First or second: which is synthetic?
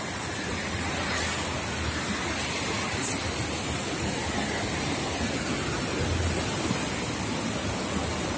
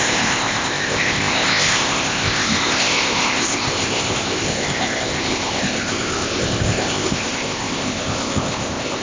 second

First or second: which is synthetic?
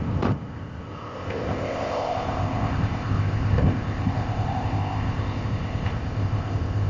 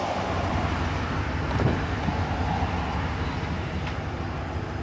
first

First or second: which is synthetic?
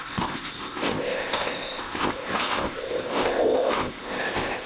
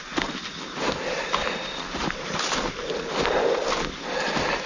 first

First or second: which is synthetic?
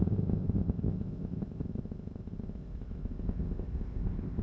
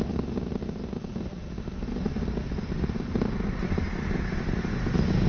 first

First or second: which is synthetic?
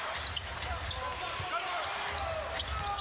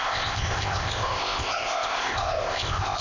second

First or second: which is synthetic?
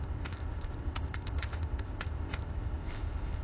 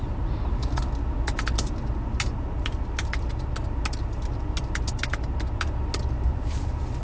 first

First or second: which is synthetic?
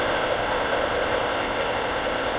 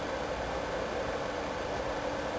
first